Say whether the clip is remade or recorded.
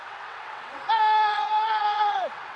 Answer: remade